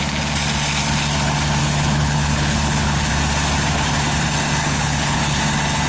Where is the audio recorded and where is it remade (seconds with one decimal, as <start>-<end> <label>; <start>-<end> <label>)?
0.0-1.6 recorded; 1.6-3.1 remade; 3.1-4.6 recorded; 4.6-5.4 remade; 5.4-5.9 recorded